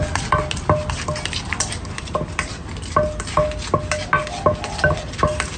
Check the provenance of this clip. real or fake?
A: real